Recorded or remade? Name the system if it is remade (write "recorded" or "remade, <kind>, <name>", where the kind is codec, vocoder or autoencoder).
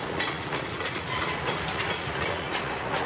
remade, vocoder, Vocos